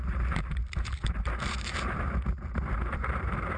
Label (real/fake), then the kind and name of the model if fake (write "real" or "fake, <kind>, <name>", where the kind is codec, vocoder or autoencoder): fake, vocoder, BigVGAN v2